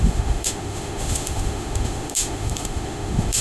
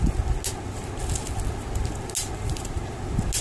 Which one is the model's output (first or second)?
first